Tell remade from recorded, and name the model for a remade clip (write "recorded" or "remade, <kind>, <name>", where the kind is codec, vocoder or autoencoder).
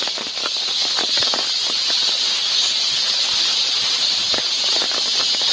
recorded